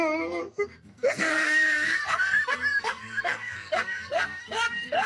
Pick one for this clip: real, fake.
fake